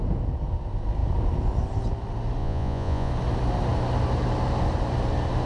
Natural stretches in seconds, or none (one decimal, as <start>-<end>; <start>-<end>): 0.0-2.4; 3.1-5.5